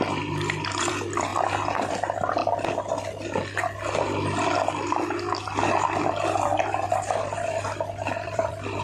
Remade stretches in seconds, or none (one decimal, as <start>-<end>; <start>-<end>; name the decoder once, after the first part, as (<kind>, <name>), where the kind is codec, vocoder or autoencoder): 0.0-1.3 (vocoder, BigVGAN v2); 1.9-2.4; 5.7-8.8